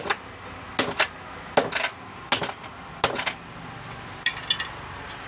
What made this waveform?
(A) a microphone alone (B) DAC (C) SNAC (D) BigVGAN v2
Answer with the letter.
A